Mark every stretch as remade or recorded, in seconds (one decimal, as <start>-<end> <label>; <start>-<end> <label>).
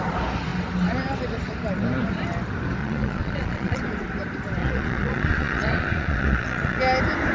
0.0-2.8 recorded; 2.8-3.8 remade; 3.8-4.6 recorded; 4.6-6.8 remade; 6.8-7.3 recorded